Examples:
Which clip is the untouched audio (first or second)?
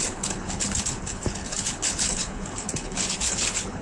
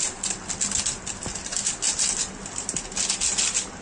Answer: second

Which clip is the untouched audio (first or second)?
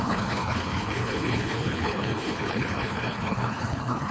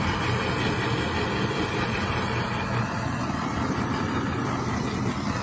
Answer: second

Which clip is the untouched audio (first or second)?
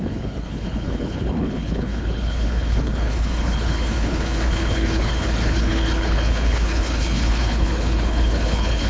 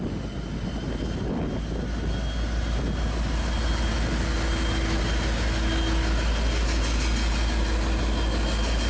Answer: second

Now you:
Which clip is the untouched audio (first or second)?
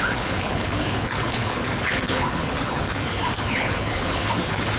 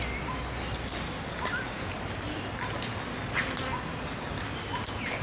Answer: second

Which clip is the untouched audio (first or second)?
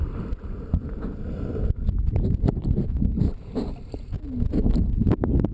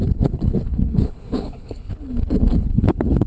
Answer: first